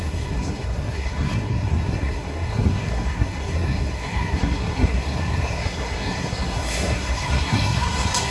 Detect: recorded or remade remade